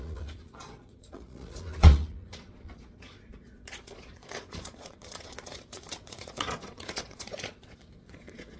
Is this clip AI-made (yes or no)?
yes